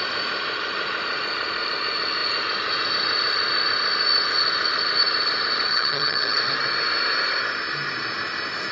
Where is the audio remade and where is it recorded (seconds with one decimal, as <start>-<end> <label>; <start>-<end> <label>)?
0.0-5.7 recorded; 5.7-6.4 remade; 6.4-8.7 recorded